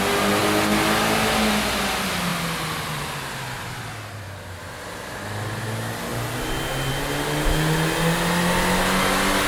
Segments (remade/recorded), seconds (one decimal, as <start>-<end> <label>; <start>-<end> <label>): 0.0-9.5 recorded